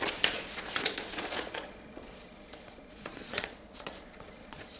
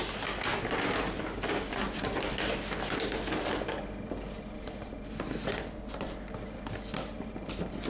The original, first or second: second